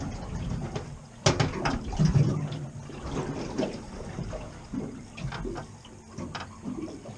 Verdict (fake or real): real